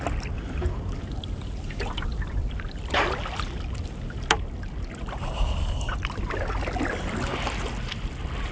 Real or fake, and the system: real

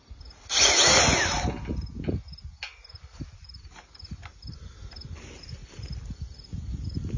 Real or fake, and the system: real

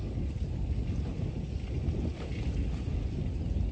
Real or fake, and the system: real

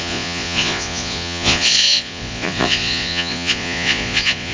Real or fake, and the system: fake, vocoder, Vocos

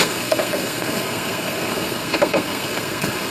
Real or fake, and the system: fake, codec, SNAC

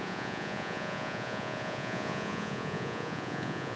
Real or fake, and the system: fake, vocoder, Vocos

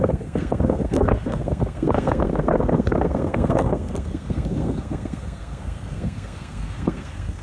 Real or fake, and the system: fake, codec, SNAC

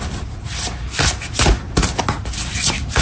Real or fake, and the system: real